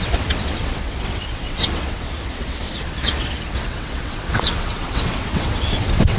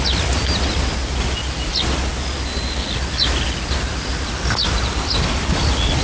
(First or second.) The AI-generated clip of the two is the first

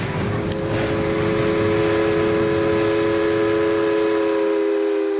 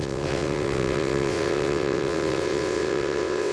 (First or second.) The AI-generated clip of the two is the second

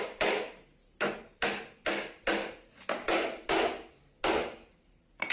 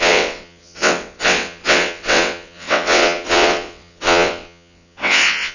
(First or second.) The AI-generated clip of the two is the second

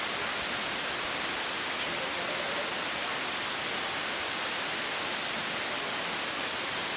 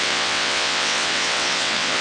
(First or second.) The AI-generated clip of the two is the second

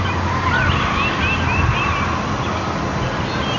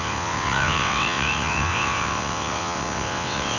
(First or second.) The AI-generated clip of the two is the second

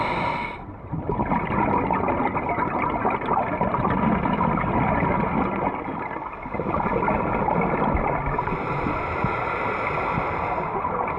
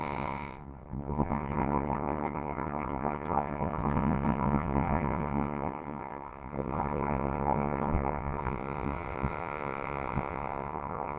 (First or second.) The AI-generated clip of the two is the second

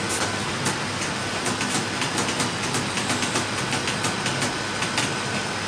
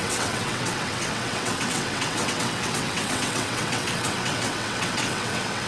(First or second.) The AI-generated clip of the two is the second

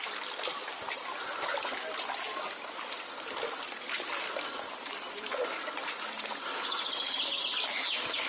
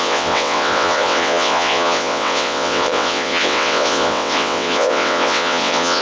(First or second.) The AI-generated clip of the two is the second